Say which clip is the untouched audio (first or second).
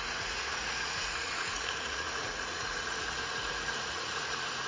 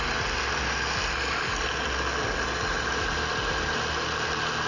second